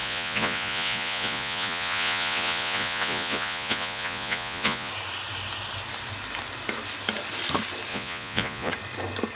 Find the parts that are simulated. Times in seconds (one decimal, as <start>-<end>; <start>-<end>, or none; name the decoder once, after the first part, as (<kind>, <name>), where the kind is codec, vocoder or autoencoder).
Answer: 0.0-4.9 (vocoder, Vocos); 7.9-8.7